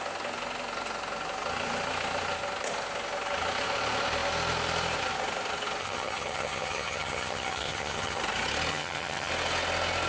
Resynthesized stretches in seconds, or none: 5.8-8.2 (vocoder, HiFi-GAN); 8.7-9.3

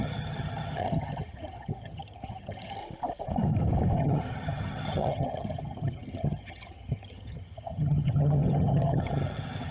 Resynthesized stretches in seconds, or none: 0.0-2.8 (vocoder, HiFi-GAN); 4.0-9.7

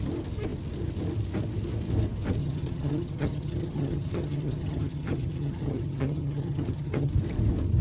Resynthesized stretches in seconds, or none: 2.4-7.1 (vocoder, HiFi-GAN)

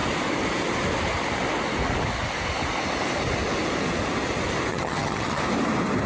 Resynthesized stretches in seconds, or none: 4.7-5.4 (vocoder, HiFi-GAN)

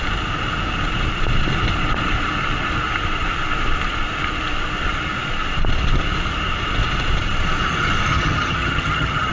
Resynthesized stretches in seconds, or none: 8.1-9.3 (vocoder, HiFi-GAN)